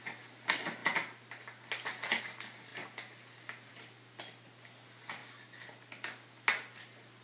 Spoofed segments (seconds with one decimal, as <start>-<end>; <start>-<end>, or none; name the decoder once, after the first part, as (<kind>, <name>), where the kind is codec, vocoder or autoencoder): none